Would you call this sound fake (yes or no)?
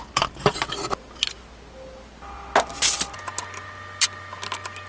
no